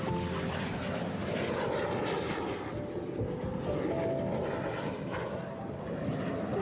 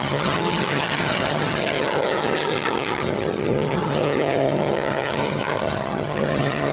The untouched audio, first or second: first